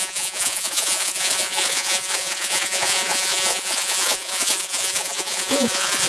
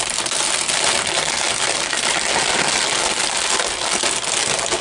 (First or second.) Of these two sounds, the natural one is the second